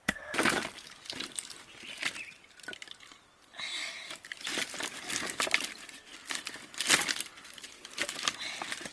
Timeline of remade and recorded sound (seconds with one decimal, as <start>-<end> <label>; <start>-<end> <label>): 0.0-8.9 recorded